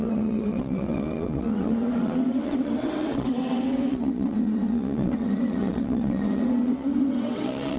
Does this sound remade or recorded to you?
remade